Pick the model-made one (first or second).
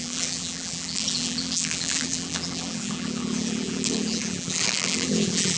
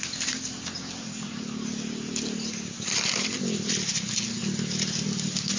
first